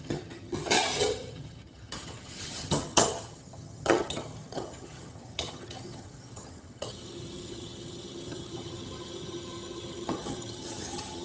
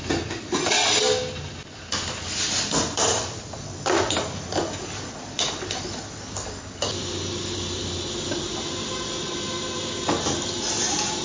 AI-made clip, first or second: first